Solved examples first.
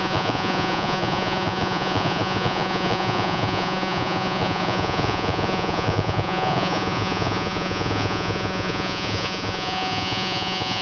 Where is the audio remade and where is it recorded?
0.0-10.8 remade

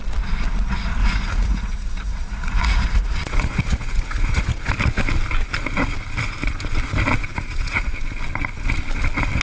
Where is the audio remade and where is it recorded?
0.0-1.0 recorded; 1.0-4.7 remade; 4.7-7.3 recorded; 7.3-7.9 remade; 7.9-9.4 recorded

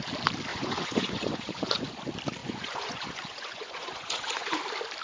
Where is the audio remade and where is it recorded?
0.0-0.5 recorded; 0.5-2.0 remade; 2.0-2.4 recorded; 2.4-4.6 remade; 4.6-5.0 recorded

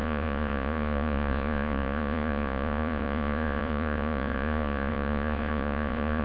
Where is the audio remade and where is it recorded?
0.0-6.2 remade